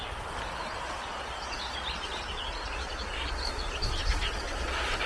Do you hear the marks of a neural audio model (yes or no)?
no